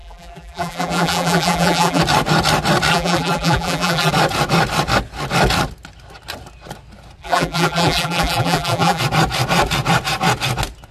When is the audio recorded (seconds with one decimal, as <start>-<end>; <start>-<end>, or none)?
2.0-2.9; 4.1-7.2; 9.0-10.9